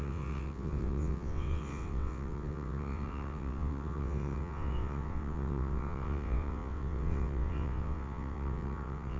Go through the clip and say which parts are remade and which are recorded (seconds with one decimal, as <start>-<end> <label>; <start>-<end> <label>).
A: 0.0-9.2 remade